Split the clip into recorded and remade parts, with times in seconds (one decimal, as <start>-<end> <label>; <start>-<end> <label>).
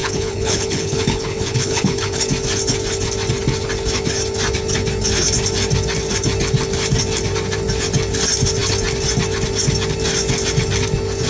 0.0-2.2 remade; 2.2-11.3 recorded